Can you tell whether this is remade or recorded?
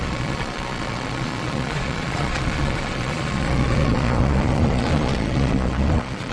remade